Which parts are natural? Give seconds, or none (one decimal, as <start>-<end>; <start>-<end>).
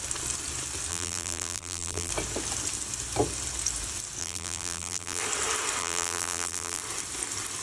0.0-0.9; 2.1-4.2; 5.2-5.8; 6.8-7.6